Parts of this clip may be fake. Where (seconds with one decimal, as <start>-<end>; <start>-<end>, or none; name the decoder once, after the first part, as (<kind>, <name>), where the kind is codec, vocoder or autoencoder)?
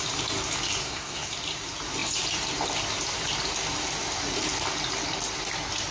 0.8-1.3 (codec, SNAC)